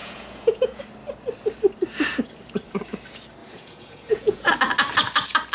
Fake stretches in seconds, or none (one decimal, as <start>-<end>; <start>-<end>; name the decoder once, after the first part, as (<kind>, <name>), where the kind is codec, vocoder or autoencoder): 0.0-0.8 (vocoder, Vocos); 3.4-4.5